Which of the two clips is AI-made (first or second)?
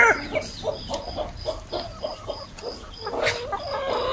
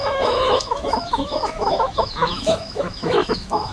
second